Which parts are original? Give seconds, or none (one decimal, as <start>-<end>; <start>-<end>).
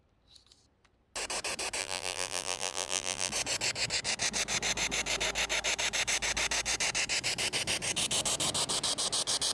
0.0-1.8; 3.3-9.5